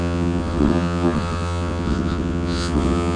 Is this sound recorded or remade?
remade